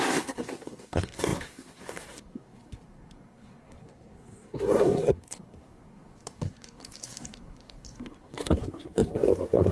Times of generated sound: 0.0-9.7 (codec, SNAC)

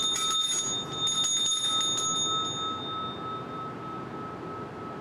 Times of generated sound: none

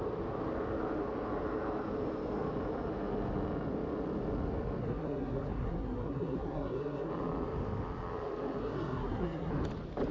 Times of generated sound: 4.8-7.1 (codec, SNAC); 8.6-9.5